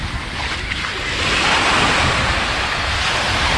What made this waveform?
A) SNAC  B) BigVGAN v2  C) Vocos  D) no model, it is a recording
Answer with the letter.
D